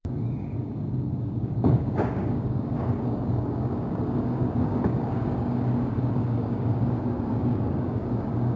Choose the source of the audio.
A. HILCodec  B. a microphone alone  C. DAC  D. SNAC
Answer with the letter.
C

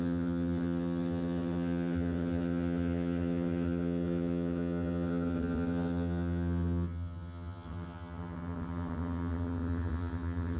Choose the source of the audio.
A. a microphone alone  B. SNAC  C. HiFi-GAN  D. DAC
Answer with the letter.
C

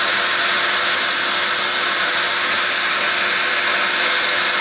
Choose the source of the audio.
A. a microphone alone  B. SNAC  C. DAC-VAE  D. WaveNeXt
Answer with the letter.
A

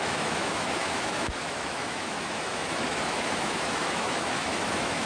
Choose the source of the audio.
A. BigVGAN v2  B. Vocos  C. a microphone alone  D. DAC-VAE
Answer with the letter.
D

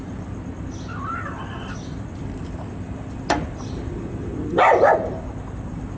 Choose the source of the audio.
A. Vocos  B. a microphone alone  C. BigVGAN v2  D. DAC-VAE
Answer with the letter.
C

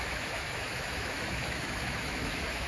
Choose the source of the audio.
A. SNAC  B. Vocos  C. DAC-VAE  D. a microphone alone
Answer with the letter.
C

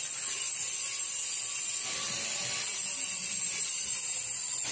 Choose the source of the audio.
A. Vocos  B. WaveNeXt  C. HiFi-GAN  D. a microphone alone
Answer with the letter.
D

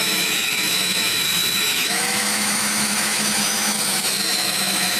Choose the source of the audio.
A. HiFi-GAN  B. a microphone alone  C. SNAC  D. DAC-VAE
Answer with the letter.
D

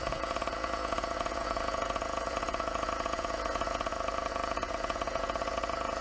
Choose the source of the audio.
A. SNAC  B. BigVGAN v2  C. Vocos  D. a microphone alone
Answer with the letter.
C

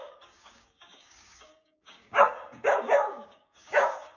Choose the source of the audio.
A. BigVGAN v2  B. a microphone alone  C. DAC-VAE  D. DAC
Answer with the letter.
D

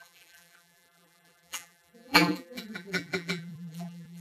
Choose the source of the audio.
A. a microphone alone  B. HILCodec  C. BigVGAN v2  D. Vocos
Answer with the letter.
C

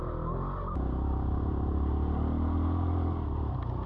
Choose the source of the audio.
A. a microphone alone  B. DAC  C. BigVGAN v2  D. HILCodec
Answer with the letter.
A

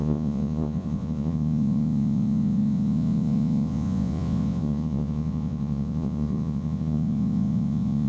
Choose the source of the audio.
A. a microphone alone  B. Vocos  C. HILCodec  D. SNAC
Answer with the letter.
B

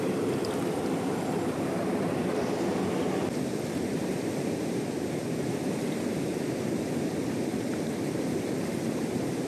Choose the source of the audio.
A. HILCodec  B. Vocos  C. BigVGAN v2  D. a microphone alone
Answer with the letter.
C